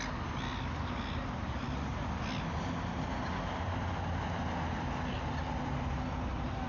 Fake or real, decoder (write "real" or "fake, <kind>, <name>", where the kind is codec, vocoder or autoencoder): real